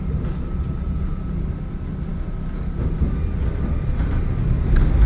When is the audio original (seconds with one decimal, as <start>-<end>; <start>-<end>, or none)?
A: 0.0-5.1